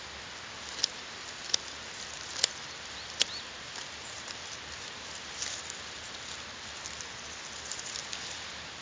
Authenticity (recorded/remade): recorded